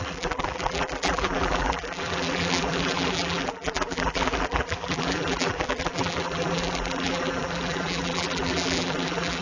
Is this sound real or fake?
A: fake